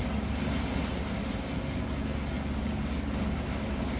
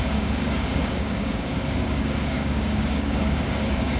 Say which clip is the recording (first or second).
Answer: first